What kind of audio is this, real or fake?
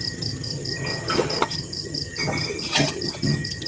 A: fake